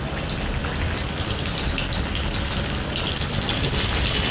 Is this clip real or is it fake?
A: real